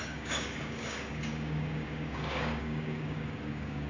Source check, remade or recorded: remade